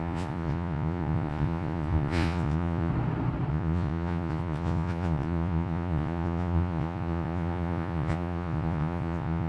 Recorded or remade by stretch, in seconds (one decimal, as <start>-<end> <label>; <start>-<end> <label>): 0.0-2.9 remade; 2.9-3.5 recorded; 3.5-9.5 remade